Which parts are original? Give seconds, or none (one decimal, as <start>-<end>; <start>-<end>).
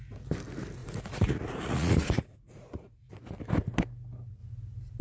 0.0-0.8; 3.1-5.0